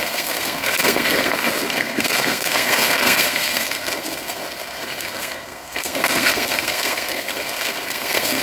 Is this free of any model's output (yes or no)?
no